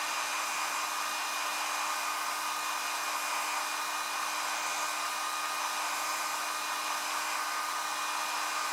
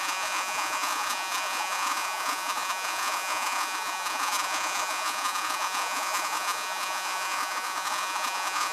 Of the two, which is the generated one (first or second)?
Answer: second